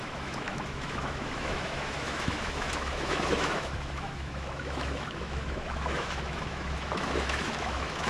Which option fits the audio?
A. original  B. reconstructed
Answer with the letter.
B